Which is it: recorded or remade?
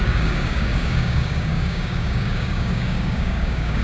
remade